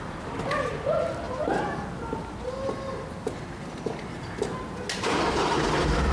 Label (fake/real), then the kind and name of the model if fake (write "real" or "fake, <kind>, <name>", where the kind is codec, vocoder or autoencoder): real